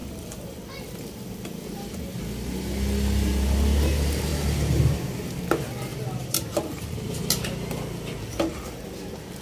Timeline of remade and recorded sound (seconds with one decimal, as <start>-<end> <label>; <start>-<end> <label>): 0.0-5.9 recorded; 5.9-7.2 remade; 7.2-9.4 recorded